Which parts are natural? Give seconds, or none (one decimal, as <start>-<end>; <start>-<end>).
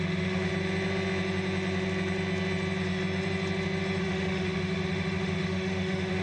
0.5-4.0